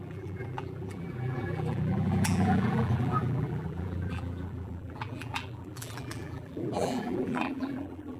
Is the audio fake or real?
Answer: fake